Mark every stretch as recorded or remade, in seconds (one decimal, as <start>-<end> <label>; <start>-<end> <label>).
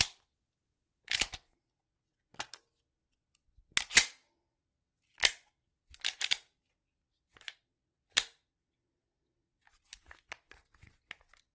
0.0-11.5 recorded